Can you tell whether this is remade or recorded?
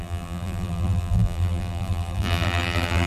remade